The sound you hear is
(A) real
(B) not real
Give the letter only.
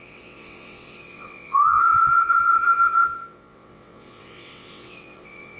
B